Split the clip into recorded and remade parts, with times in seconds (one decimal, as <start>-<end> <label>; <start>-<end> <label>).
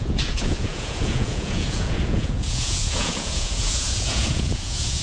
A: 0.0-5.0 remade